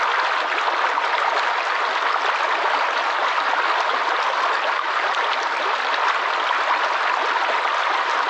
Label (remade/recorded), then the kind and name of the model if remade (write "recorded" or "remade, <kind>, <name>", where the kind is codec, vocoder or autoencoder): recorded